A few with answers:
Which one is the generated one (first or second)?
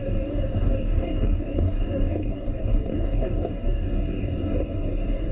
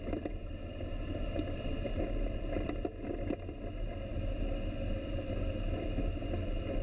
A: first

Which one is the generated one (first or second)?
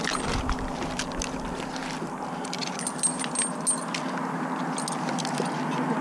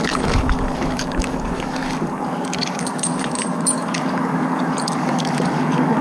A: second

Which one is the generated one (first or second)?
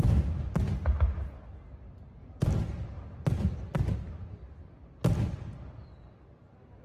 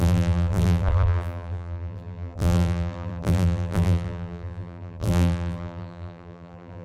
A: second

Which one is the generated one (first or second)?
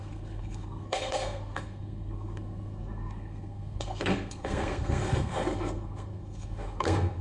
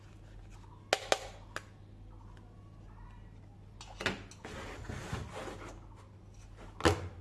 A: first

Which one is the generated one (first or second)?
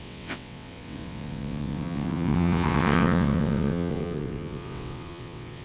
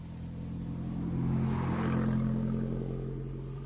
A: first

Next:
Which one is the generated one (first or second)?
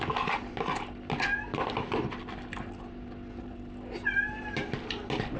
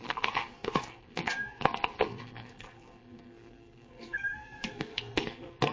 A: second